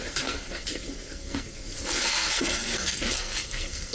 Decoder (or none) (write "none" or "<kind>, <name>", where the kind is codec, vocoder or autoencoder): codec, SNAC